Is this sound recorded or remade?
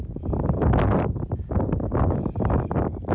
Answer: recorded